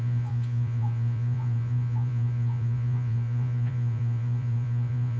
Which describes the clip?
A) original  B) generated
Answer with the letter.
B